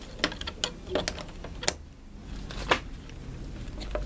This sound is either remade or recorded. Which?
recorded